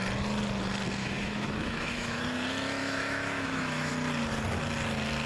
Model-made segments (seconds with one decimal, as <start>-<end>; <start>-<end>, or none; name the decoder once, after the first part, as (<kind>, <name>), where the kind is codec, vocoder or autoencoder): 1.0-2.2 (autoencoder, DAC-VAE); 2.8-3.9